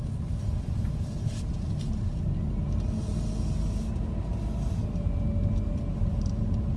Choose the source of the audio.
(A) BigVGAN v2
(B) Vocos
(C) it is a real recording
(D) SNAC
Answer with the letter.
C